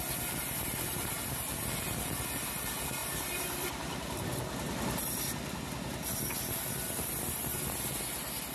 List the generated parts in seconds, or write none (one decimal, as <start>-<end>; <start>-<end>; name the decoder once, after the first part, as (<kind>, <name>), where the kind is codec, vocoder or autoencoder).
3.0-6.2 (vocoder, BigVGAN v2)